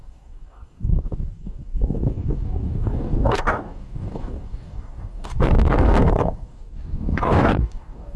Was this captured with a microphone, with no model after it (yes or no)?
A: no